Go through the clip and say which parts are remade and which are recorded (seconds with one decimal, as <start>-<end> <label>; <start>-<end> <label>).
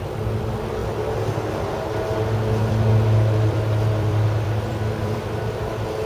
0.0-2.6 recorded; 2.6-5.2 remade; 5.2-6.1 recorded